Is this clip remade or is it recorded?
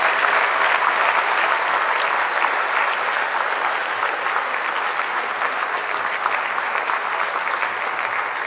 recorded